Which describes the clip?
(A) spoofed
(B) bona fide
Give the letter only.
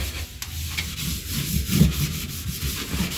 B